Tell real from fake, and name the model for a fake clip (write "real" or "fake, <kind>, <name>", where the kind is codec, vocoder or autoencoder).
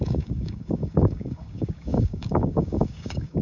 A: fake, codec, DAC